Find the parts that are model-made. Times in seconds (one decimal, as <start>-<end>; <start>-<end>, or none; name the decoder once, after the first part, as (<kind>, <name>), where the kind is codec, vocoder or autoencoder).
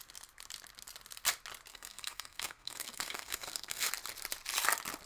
1.7-3.9 (codec, SNAC)